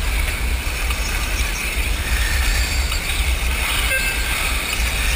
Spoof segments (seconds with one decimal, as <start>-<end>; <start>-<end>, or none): 1.6-4.7